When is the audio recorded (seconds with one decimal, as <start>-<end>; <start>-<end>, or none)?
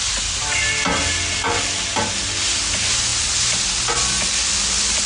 0.0-5.1